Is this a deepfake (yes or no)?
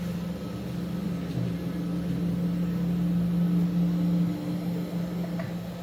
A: no